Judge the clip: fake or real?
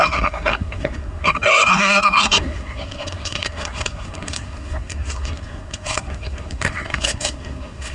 fake